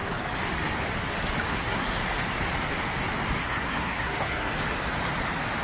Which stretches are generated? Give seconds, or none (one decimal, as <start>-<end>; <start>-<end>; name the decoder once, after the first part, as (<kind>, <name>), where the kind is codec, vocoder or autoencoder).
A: 1.5-2.0 (codec, SNAC); 3.4-4.5